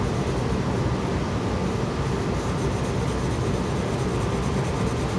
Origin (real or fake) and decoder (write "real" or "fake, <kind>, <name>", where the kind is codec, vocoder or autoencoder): real